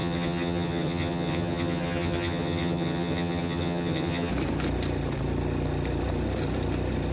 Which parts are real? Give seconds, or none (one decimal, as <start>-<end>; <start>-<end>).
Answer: 4.3-7.1